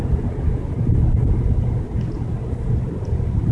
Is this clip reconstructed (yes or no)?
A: no